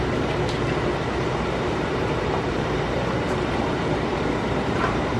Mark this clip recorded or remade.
remade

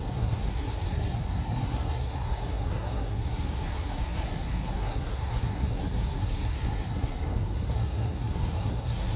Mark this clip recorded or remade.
remade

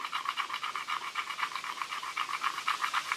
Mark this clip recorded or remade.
recorded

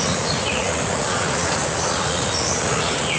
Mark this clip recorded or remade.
remade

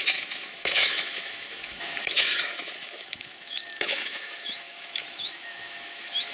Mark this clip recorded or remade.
remade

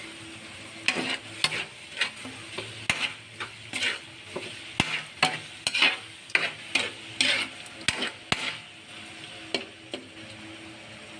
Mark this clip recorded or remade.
recorded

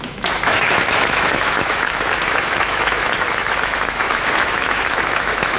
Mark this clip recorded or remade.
remade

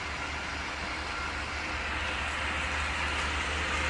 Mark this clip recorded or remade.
recorded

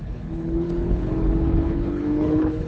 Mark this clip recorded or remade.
remade